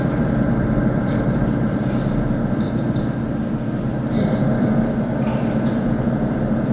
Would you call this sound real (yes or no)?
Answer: no